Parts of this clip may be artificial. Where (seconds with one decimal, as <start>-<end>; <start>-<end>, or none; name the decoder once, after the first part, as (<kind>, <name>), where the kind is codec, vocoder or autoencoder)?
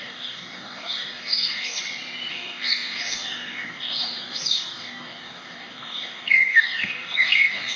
0.0-1.8 (codec, DAC); 2.3-7.8